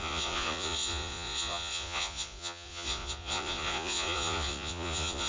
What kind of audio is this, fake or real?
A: fake